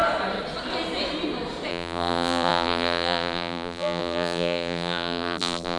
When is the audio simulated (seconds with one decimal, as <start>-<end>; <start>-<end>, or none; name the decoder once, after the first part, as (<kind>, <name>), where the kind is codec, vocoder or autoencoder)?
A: 1.7-5.8 (vocoder, BigVGAN v2)